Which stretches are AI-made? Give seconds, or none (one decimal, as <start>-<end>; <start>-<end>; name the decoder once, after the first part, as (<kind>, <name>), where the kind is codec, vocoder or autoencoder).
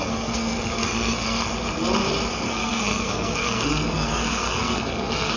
0.0-1.5 (codec, SNAC); 2.3-5.4